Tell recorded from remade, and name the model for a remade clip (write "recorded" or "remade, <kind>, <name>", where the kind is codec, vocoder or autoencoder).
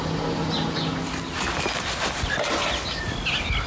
recorded